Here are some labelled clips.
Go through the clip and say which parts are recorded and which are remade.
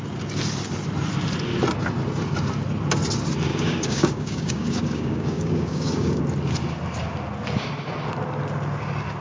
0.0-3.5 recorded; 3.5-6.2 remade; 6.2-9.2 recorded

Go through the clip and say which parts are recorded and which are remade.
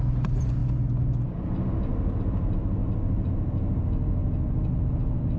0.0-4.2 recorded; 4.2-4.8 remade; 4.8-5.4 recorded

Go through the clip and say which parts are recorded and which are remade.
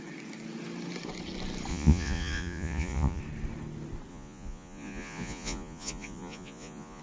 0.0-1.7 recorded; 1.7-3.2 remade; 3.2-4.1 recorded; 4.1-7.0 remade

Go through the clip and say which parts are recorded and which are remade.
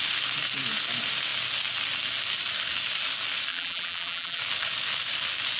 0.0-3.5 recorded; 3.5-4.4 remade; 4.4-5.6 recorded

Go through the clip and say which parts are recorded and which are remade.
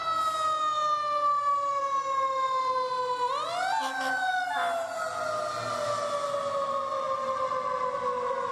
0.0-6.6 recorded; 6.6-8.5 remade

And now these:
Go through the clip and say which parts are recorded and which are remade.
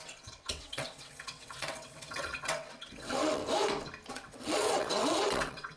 0.0-3.4 remade; 3.4-4.1 recorded; 4.1-5.8 remade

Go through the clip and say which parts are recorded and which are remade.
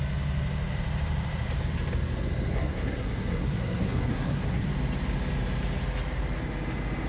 0.0-2.5 recorded; 2.5-4.7 remade; 4.7-7.1 recorded